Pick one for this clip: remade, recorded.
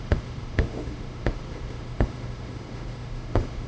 remade